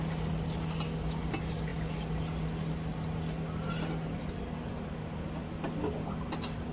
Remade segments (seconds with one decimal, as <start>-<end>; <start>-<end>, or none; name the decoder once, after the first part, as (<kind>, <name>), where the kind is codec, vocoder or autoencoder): none